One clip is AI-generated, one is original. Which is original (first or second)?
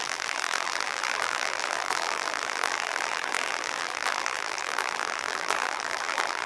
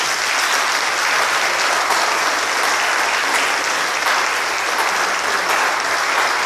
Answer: second